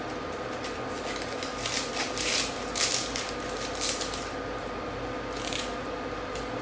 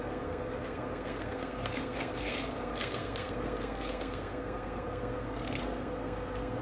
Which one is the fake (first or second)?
second